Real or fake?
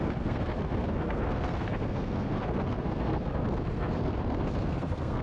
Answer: fake